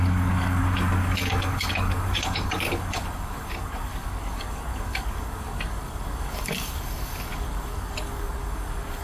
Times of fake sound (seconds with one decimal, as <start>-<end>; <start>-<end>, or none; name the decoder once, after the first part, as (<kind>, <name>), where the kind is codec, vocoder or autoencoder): 0.0-9.0 (codec, DAC)